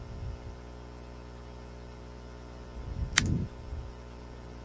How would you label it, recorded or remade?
recorded